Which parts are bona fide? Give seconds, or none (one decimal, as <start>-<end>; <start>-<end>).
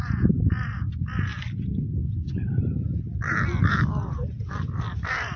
0.0-5.4